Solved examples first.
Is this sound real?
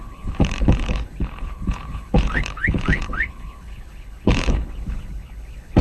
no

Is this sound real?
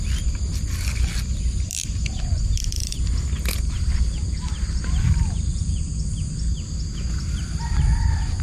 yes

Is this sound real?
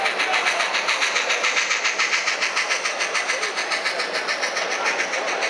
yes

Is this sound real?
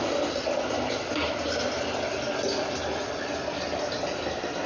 yes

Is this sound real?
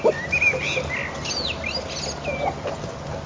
yes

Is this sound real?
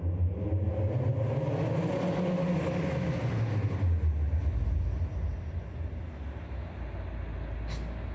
yes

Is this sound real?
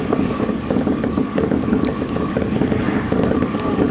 no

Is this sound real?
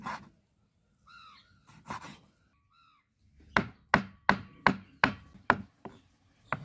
yes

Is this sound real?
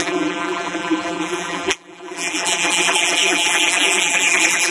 no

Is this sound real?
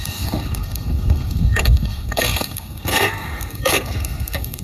no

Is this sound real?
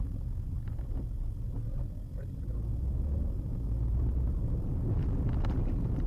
yes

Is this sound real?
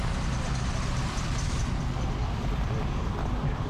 yes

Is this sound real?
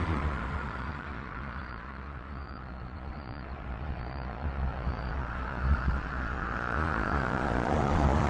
no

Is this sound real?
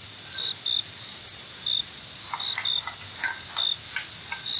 yes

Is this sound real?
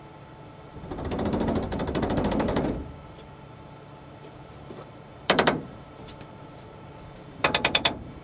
no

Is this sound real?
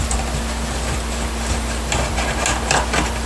yes